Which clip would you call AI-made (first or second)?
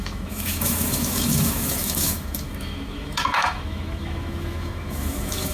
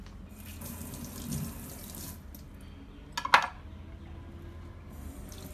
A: first